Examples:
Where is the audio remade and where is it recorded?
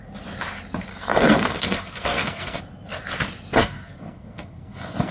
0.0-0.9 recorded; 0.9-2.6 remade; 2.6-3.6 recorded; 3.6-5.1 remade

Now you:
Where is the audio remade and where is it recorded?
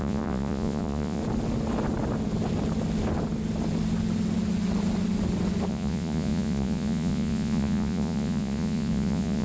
0.0-1.2 remade; 1.2-5.7 recorded; 5.7-9.4 remade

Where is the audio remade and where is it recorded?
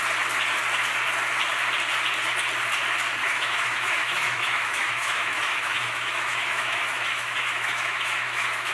0.0-3.2 recorded; 3.2-8.7 remade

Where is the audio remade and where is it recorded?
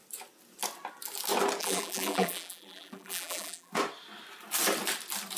0.0-1.6 recorded; 1.6-3.7 remade; 3.7-5.4 recorded